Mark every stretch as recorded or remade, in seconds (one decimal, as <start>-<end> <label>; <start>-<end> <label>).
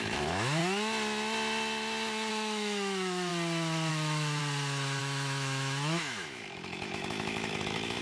0.0-0.6 remade; 0.6-2.3 recorded; 2.3-3.3 remade; 3.3-3.9 recorded; 3.9-4.4 remade; 4.4-5.0 recorded; 5.0-8.0 remade